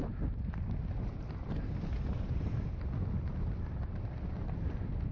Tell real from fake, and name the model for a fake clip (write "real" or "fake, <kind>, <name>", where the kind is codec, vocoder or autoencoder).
real